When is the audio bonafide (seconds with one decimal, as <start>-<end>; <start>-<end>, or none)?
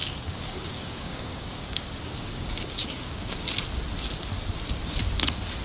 3.4-5.6